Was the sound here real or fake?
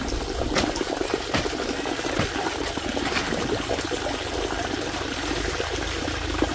real